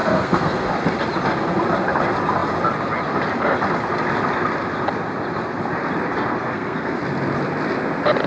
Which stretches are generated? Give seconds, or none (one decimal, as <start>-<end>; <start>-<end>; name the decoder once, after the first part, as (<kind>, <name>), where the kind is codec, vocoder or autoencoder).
0.0-0.7 (codec, SNAC); 6.4-7.0